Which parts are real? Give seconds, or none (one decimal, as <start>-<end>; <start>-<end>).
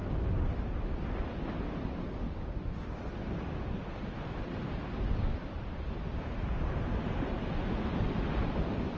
0.0-9.0